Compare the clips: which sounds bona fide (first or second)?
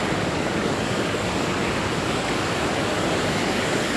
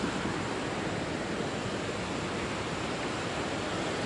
second